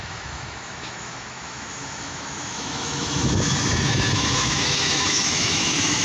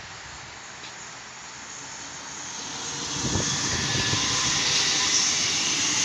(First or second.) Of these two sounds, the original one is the second